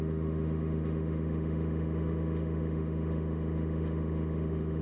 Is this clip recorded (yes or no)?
no